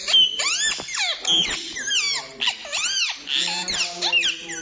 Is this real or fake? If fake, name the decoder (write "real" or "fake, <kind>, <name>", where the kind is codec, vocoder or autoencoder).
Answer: real